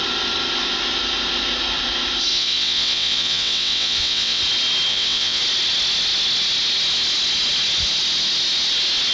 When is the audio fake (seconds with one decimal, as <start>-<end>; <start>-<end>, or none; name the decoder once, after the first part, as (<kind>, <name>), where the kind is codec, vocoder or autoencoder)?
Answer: 2.3-4.4 (vocoder, WaveNeXt); 4.9-5.4